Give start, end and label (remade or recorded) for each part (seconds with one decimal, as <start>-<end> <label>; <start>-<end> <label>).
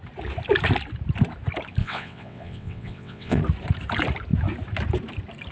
0.0-1.8 recorded; 1.8-3.4 remade; 3.4-5.5 recorded